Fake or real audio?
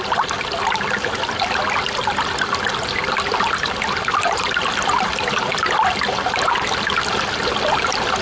real